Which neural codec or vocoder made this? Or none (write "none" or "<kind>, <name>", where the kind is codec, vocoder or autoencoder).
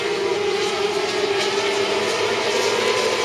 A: none